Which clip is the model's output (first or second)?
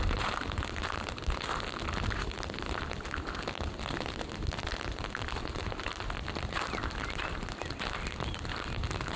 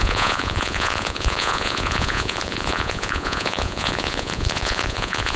second